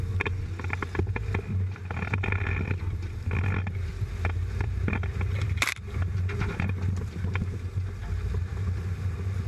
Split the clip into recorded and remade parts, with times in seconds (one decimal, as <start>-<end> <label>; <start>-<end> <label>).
0.0-9.5 recorded